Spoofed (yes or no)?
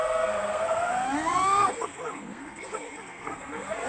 yes